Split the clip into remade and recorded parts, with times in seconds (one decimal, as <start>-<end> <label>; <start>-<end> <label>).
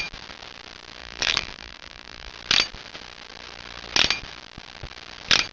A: 0.0-1.0 recorded; 1.0-2.3 remade; 2.3-5.5 recorded